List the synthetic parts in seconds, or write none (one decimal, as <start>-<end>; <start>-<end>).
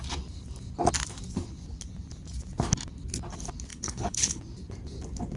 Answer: 3.7-4.4